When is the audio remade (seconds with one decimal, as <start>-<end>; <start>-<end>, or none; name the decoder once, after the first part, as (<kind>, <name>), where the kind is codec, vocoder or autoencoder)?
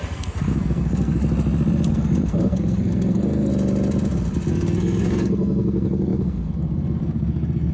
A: 0.0-1.2 (codec, SNAC); 1.9-3.5; 4.5-7.7